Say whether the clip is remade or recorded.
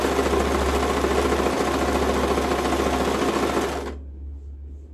recorded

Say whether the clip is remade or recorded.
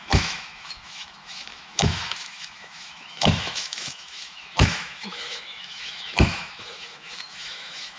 remade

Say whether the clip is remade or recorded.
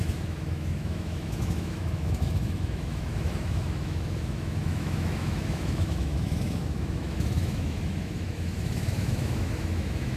remade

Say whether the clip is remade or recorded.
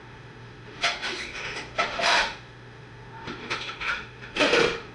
remade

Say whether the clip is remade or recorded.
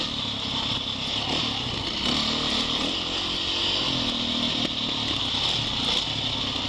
recorded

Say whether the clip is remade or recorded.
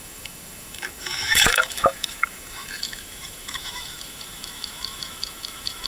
remade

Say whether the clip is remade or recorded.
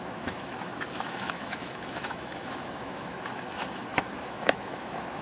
remade